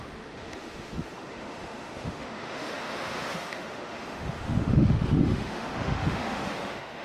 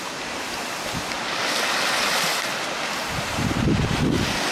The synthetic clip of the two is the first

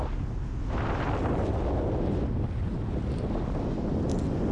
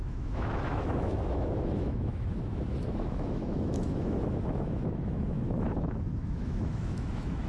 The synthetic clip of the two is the second